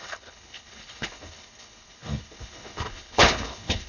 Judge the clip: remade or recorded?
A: remade